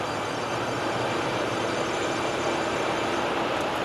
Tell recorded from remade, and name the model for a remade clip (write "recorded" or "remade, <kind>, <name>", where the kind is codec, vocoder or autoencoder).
remade, vocoder, BigVGAN v2